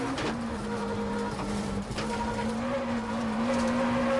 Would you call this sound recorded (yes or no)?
no